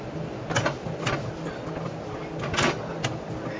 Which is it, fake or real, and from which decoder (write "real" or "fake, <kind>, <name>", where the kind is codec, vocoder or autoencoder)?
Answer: real